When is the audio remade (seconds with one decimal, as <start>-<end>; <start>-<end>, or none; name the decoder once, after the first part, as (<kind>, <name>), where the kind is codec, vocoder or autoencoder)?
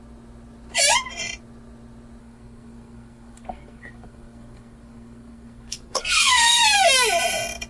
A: 2.2-6.6 (codec, SNAC)